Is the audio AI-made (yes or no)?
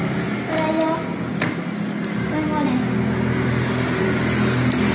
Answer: no